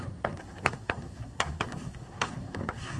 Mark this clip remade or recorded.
remade